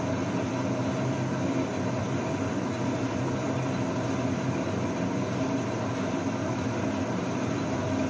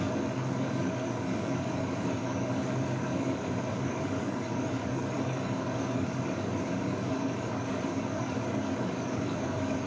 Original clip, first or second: first